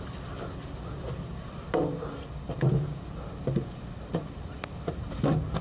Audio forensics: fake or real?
real